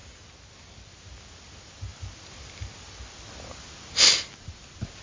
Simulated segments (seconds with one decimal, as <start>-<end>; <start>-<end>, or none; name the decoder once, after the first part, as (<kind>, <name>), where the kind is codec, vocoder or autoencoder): none